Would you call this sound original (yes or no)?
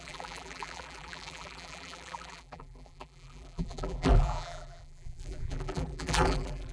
no